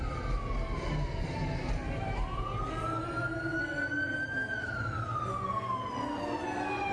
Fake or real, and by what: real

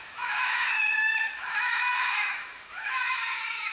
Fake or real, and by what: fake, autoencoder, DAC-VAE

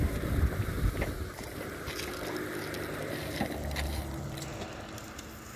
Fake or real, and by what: real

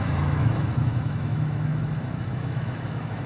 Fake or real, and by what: fake, autoencoder, DAC-VAE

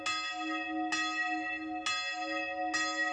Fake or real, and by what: real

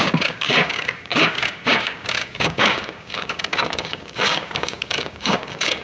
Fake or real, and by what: fake, codec, DAC